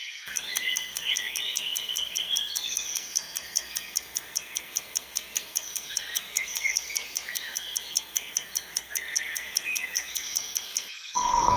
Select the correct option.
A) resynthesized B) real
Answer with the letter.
A